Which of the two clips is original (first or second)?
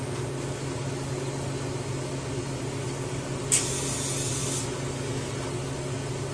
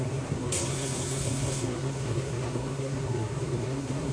first